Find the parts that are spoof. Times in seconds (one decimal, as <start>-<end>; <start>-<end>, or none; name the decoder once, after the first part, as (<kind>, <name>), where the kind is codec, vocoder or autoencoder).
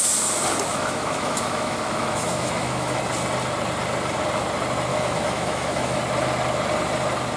0.7-3.0 (autoencoder, DAC-VAE); 4.9-6.0